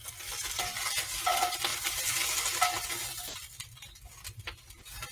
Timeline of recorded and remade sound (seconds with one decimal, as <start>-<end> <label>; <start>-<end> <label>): 0.0-1.7 recorded; 1.7-2.3 remade; 2.3-5.1 recorded